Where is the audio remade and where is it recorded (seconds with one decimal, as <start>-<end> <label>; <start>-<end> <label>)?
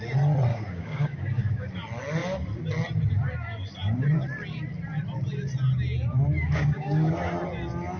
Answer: 0.0-0.5 recorded; 0.5-1.7 remade; 1.7-6.1 recorded; 6.1-7.1 remade; 7.1-8.0 recorded